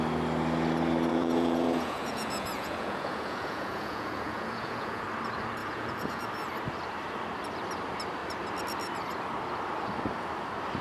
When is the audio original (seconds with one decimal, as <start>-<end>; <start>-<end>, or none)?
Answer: 0.0-1.1; 5.0-5.6; 6.2-10.8